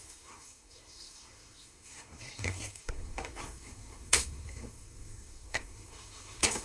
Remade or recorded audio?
remade